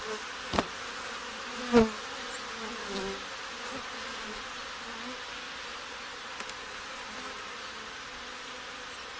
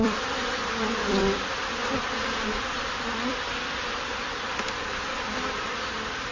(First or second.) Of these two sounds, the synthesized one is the second